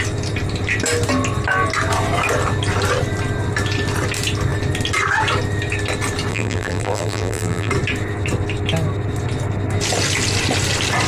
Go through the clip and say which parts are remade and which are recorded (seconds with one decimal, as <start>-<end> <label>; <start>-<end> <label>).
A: 0.0-6.3 recorded; 6.3-7.7 remade; 7.7-11.1 recorded

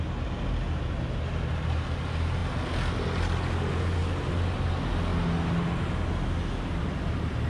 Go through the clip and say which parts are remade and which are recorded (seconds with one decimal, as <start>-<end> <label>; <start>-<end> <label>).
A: 0.0-7.5 recorded

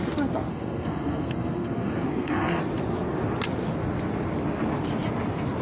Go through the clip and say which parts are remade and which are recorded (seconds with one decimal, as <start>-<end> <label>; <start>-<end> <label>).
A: 0.0-0.5 recorded; 0.5-2.6 remade; 2.6-5.6 recorded

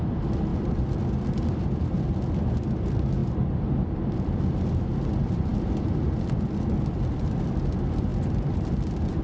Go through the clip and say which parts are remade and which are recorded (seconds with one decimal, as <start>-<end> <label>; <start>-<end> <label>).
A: 0.0-3.2 recorded; 3.2-3.8 remade; 3.8-5.5 recorded; 5.5-7.6 remade; 7.6-8.1 recorded; 8.1-9.2 remade

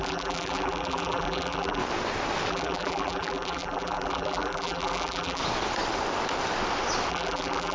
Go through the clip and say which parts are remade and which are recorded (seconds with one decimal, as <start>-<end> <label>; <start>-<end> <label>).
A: 0.0-1.8 remade; 1.8-2.5 recorded; 2.5-5.4 remade; 5.4-7.1 recorded; 7.1-7.7 remade

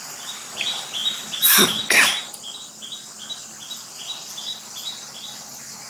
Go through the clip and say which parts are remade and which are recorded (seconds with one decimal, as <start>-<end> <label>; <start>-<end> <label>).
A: 0.0-5.9 recorded